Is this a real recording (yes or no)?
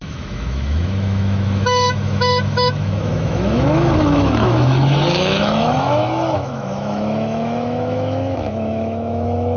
no